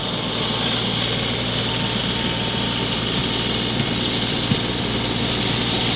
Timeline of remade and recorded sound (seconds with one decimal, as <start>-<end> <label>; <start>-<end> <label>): 0.0-6.0 recorded